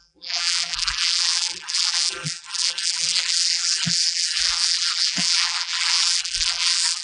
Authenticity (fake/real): fake